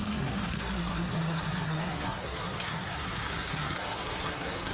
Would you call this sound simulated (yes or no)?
yes